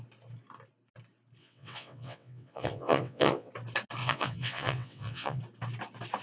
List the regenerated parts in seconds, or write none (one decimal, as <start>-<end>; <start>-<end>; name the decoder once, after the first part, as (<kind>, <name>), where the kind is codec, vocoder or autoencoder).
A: 1.4-3.5 (vocoder, WaveNeXt); 4.0-5.4